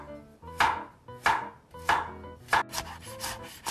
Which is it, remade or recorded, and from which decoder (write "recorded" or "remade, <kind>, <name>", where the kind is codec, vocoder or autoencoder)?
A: recorded